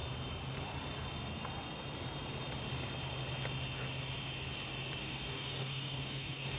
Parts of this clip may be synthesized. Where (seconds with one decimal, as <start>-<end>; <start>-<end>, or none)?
5.0-6.6